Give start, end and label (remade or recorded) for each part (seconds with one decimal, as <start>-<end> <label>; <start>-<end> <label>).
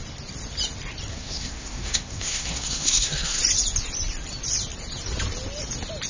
0.0-1.1 recorded; 1.1-3.4 remade; 3.4-6.1 recorded